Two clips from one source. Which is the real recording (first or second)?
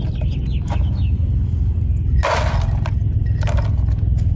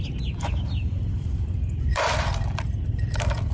first